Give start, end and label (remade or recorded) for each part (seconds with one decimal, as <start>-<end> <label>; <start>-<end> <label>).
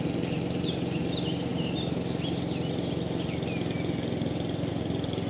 0.0-5.3 recorded